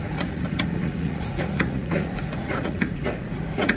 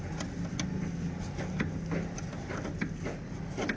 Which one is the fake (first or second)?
first